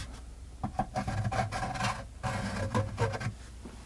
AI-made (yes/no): no